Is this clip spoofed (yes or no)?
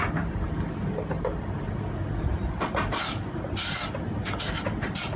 no